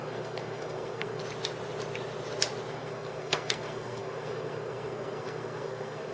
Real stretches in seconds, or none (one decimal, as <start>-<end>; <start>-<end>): 1.2-2.7